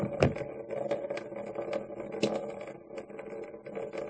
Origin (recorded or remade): recorded